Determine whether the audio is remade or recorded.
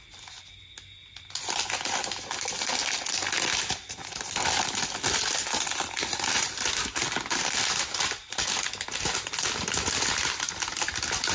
recorded